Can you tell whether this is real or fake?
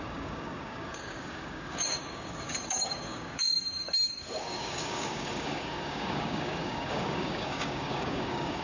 fake